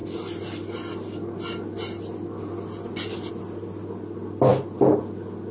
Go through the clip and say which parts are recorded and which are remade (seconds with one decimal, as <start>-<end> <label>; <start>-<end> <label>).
0.0-5.5 recorded